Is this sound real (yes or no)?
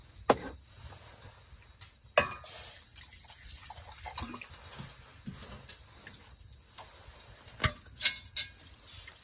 yes